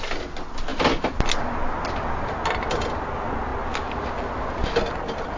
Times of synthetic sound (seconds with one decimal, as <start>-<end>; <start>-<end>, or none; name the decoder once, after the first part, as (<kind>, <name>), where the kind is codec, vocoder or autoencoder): none